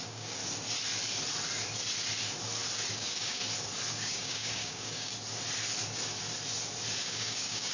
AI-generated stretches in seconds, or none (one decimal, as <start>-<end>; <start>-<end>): 0.0-0.4; 2.9-3.4; 3.9-5.1; 7.0-7.7